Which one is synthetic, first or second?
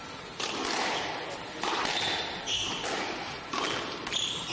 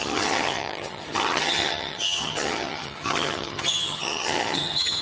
second